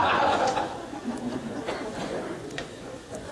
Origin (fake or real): fake